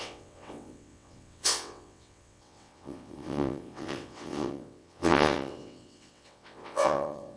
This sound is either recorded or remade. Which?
remade